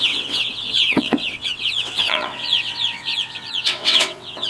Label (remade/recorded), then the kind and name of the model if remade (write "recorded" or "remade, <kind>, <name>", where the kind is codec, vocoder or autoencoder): remade, vocoder, WaveNeXt